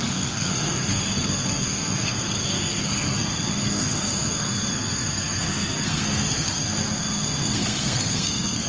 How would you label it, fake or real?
fake